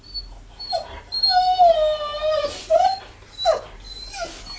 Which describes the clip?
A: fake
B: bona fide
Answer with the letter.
B